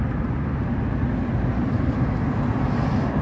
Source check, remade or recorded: recorded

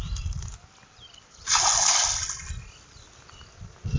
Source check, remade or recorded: recorded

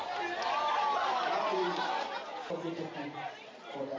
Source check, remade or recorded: recorded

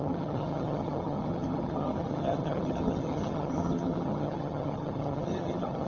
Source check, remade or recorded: remade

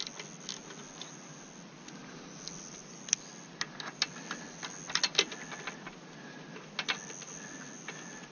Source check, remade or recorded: recorded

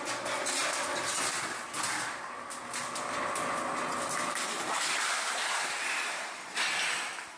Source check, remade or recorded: recorded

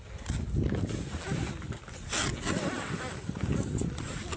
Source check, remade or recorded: recorded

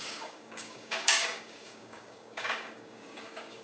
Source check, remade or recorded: remade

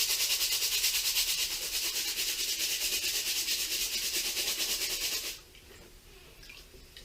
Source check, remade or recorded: recorded